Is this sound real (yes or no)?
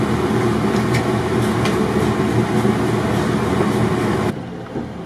yes